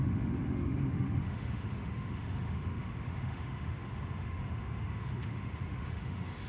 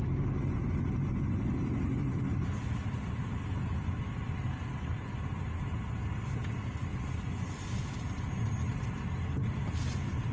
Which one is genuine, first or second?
second